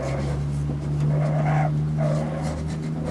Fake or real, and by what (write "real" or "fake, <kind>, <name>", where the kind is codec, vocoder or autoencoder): real